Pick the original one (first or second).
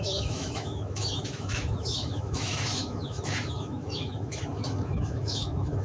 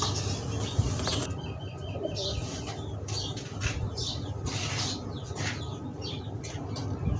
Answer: second